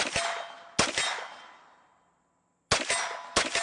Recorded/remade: recorded